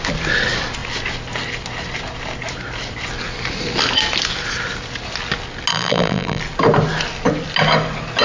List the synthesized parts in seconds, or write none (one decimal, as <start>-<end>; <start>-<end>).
5.7-6.4